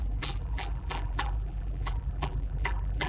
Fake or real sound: fake